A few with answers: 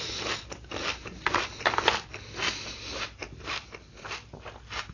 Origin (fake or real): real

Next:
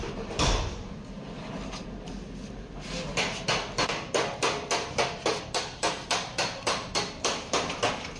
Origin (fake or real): real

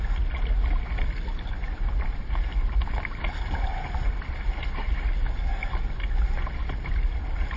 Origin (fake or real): real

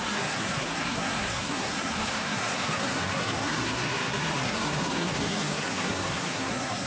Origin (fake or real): fake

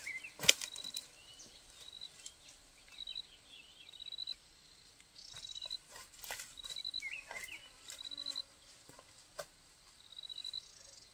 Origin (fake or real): real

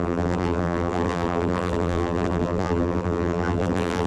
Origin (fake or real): fake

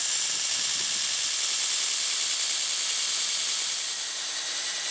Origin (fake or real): real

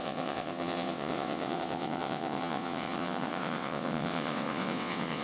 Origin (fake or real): fake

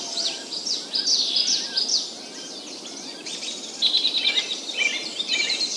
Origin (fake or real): real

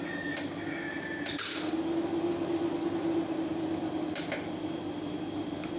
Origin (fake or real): real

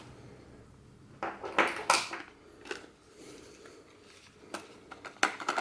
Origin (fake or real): real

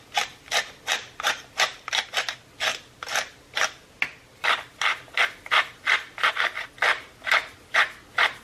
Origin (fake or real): real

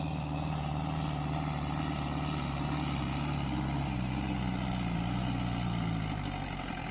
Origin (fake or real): real